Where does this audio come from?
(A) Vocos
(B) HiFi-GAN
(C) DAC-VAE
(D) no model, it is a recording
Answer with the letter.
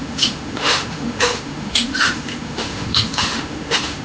C